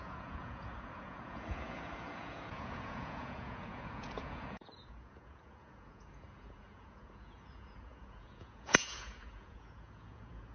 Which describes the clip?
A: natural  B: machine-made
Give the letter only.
B